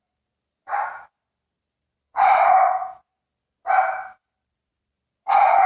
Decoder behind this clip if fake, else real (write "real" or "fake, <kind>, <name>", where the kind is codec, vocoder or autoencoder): real